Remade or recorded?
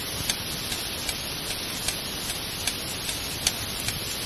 recorded